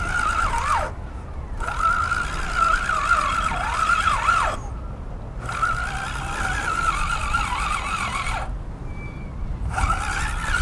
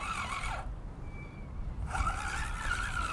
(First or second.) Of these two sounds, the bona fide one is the first